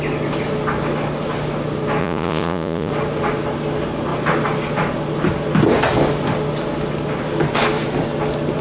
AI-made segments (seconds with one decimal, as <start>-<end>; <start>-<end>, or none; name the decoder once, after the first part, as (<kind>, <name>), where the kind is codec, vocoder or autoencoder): 2.0-2.9 (vocoder, Vocos)